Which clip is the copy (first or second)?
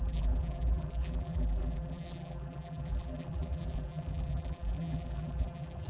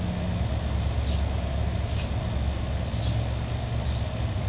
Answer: first